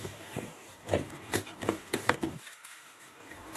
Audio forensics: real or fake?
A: fake